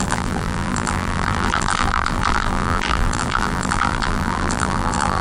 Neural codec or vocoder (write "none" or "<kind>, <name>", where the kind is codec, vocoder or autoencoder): vocoder, BigVGAN v2